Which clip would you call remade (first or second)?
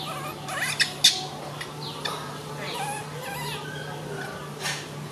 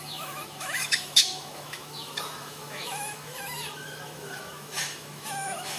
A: second